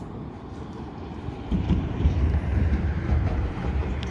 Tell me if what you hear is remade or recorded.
remade